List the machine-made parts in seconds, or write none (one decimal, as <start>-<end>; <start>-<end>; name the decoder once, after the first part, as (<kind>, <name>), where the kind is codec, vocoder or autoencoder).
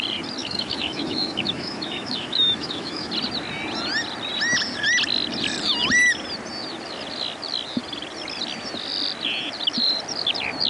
0.4-3.1 (autoencoder, DAC-VAE)